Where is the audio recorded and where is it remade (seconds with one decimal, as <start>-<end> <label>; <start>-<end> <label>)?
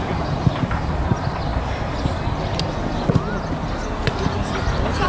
0.0-5.1 recorded